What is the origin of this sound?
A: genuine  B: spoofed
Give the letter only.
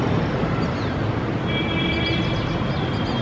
A